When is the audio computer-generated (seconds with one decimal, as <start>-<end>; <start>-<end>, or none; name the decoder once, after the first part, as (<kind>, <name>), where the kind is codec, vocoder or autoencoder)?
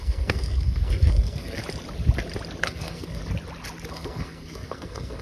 0.0-1.6 (codec, SNAC); 2.6-3.2; 3.9-5.2